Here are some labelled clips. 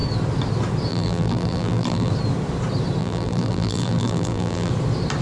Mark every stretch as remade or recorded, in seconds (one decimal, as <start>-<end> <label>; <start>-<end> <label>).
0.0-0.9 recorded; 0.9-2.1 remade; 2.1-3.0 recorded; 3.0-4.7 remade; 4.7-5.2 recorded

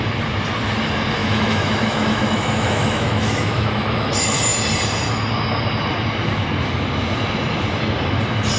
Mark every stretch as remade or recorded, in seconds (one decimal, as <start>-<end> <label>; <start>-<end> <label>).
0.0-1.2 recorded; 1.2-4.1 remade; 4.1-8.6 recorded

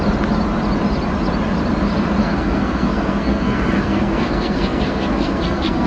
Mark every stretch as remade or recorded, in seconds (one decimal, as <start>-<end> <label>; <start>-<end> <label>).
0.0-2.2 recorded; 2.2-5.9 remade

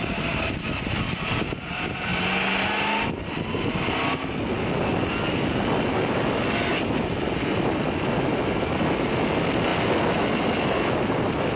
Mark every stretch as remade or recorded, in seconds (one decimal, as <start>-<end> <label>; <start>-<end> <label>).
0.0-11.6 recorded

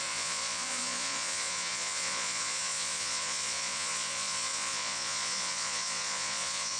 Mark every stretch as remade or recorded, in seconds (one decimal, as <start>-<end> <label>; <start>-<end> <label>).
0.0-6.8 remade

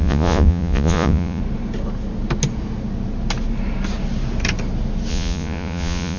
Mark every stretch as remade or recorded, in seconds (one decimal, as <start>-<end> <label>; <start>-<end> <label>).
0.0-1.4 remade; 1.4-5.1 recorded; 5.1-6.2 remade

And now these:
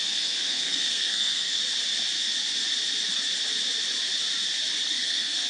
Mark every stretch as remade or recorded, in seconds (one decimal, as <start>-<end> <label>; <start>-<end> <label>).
0.0-1.6 remade; 1.6-4.9 recorded; 4.9-5.5 remade